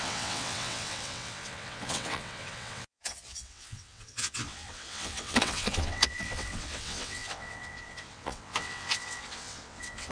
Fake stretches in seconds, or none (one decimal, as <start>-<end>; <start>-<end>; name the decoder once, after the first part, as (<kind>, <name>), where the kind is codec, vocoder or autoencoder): 0.0-10.1 (vocoder, WaveNeXt)

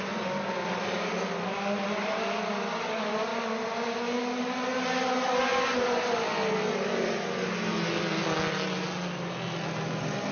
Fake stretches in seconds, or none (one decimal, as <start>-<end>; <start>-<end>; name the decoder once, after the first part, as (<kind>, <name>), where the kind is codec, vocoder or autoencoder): none

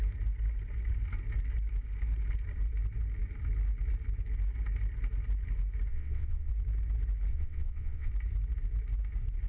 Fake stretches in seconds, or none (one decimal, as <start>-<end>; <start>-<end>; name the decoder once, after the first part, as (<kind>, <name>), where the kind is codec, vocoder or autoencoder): 5.9-6.5 (vocoder, WaveNeXt); 7.3-8.1